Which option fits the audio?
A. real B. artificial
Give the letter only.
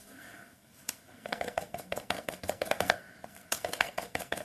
B